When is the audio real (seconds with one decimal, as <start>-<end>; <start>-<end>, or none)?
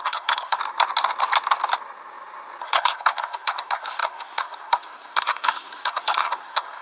0.6-2.6